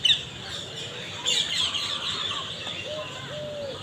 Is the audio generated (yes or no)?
no